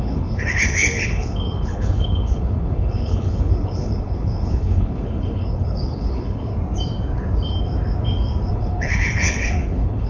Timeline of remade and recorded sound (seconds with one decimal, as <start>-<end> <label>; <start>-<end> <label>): 0.0-6.5 remade; 6.5-8.5 recorded; 8.5-10.1 remade